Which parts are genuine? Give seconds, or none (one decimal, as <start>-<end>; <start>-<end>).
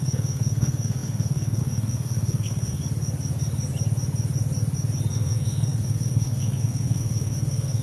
2.8-5.1